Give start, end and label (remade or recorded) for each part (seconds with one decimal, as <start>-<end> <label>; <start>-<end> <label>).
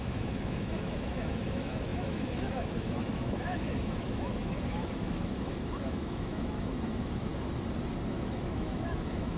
0.0-7.3 remade; 7.3-8.1 recorded; 8.1-9.4 remade